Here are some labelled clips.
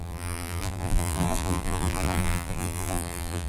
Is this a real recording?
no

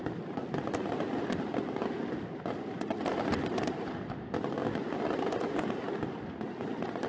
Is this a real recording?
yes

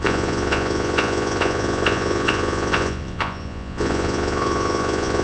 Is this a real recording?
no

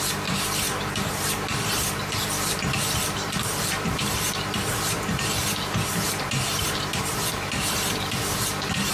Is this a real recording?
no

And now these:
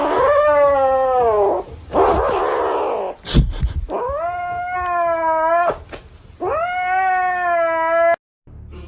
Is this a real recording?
yes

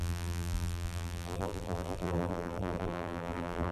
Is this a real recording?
no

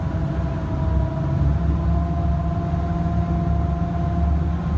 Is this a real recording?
yes